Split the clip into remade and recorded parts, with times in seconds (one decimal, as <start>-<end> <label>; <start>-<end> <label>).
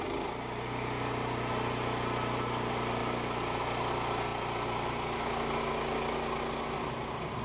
0.0-7.4 recorded